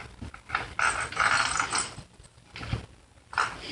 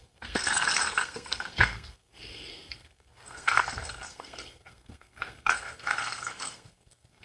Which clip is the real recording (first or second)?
first